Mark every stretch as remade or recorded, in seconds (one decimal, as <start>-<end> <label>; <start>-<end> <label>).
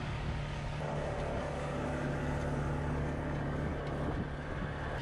0.0-3.7 remade; 3.7-5.0 recorded